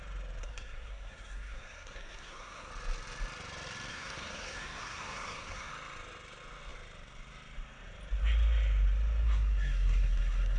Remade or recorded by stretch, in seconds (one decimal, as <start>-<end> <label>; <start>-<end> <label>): 0.0-0.4 recorded; 0.4-2.7 remade; 2.7-3.9 recorded; 3.9-5.7 remade; 5.7-9.2 recorded; 9.2-10.6 remade